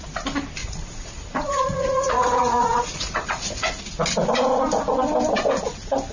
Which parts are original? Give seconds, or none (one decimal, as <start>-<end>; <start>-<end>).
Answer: 0.0-0.6; 3.8-6.1